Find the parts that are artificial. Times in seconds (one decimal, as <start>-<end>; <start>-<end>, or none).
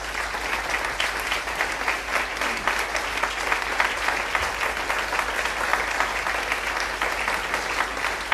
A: none